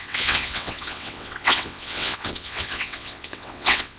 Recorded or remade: remade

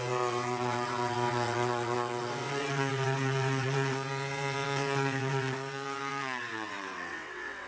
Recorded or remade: remade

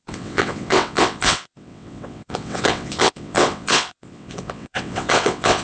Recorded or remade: remade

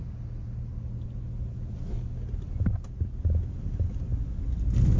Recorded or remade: recorded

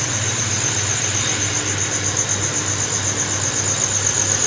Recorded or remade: recorded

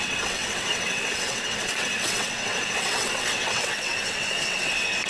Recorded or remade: remade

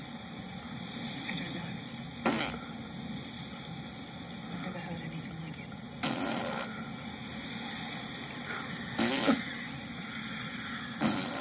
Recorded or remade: recorded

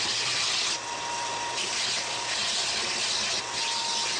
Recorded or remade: recorded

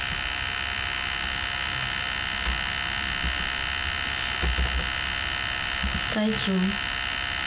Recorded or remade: recorded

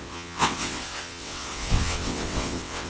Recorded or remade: remade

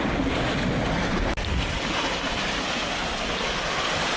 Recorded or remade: recorded